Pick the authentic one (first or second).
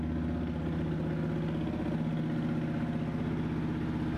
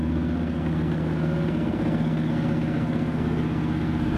first